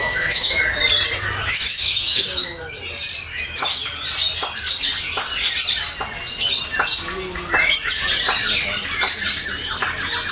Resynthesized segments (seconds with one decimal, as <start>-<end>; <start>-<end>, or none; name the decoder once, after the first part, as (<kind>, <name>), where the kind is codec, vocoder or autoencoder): 0.0-0.6 (autoencoder, DAC-VAE); 1.4-2.5; 3.3-3.8